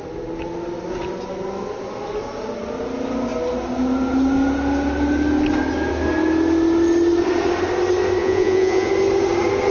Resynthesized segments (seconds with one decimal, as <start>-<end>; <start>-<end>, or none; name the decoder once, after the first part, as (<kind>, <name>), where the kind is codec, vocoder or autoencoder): 8.2-8.9 (vocoder, Vocos)